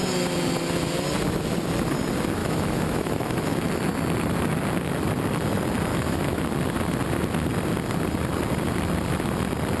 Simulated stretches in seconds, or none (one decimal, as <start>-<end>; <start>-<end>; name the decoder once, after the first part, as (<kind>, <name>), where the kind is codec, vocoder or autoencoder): 2.4-3.7 (autoencoder, DAC-VAE); 5.9-6.4